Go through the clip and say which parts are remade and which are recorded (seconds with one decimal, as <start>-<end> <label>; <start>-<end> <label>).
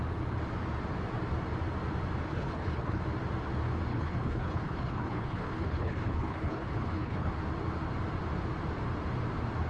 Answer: 0.0-2.3 recorded; 2.3-3.0 remade; 3.0-3.9 recorded; 3.9-7.3 remade; 7.3-9.7 recorded